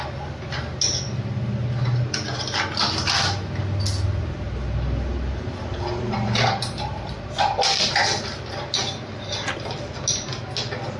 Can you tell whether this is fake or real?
real